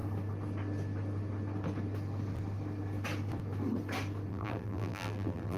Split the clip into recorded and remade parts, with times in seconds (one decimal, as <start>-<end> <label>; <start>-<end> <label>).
0.0-4.3 recorded; 4.3-5.6 remade